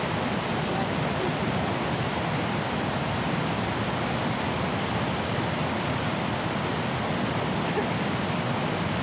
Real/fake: real